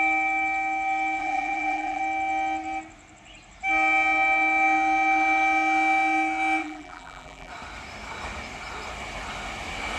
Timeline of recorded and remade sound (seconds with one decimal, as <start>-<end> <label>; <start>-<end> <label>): 0.0-1.2 recorded; 1.2-2.0 remade; 2.0-6.6 recorded; 6.6-7.5 remade; 7.5-10.0 recorded